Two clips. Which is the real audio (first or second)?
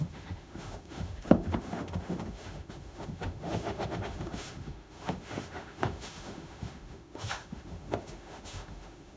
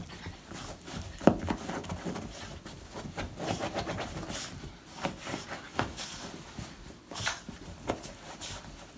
second